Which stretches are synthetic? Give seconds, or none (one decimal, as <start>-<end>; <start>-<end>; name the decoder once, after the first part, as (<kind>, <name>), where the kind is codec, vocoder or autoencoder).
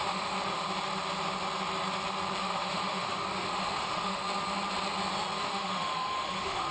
0.0-0.6 (autoencoder, DAC-VAE); 2.4-4.2; 5.4-6.7